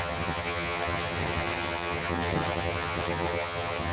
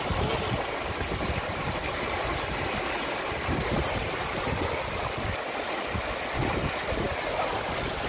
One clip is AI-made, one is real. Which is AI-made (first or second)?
first